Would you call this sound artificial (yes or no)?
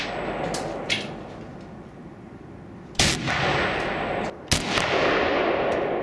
no